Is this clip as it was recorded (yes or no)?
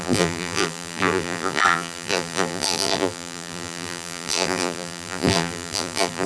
no